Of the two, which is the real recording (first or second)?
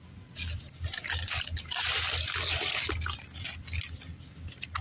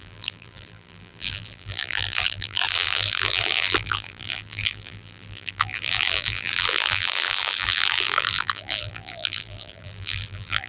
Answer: first